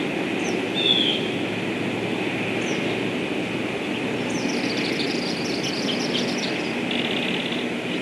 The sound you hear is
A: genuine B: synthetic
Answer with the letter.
A